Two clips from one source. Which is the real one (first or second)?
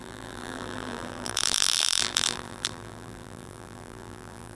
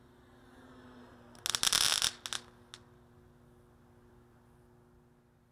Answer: second